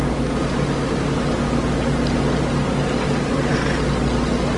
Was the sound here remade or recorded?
recorded